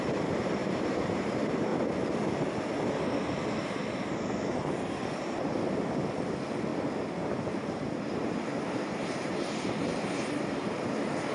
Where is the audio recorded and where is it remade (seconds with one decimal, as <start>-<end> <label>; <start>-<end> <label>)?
0.0-1.7 remade; 1.7-6.2 recorded; 6.2-6.7 remade; 6.7-7.2 recorded; 7.2-11.3 remade